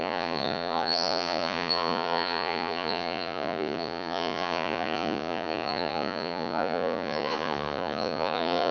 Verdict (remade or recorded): remade